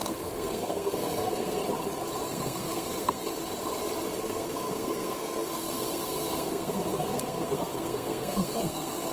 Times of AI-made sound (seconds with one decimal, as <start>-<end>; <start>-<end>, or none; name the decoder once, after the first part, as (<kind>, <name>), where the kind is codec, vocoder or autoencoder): 0.0-1.6 (codec, SNAC); 2.3-3.3; 4.2-9.1